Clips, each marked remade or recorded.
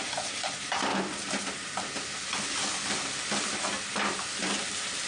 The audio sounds recorded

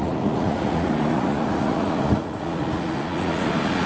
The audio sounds remade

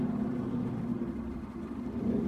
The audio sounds recorded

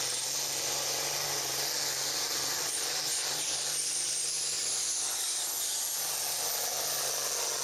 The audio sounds recorded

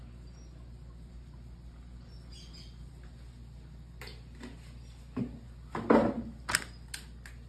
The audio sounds recorded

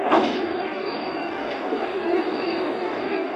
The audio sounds remade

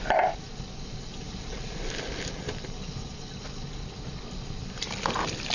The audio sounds recorded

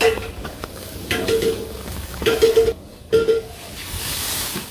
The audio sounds remade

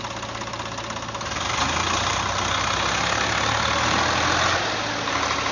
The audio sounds recorded